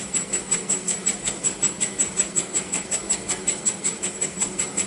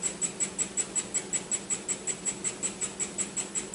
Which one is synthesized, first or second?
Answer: first